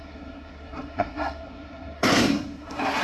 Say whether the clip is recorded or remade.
remade